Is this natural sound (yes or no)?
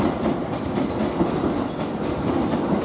yes